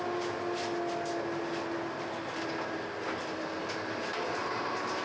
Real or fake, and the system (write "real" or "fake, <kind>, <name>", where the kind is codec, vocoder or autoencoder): real